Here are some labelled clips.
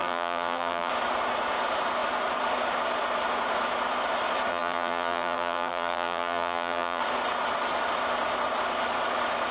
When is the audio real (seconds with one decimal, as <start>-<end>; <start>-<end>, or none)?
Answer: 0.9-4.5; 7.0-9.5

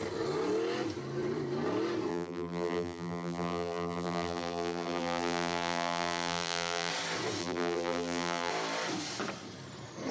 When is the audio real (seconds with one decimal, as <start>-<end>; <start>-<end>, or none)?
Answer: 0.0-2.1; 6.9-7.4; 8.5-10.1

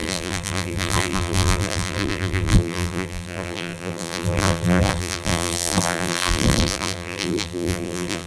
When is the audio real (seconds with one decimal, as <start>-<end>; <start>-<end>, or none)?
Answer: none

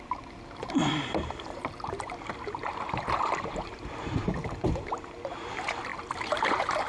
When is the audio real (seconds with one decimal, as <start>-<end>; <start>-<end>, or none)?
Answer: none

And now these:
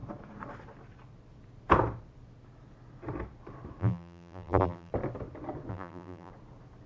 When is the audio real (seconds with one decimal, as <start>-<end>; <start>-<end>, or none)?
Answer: 0.0-3.8; 4.9-5.7; 6.3-6.9

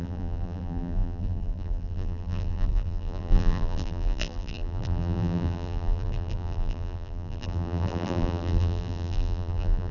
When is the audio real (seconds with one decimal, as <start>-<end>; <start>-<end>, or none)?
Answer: none

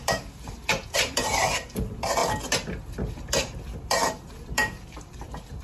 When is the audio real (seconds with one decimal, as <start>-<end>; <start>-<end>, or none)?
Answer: 2.2-2.9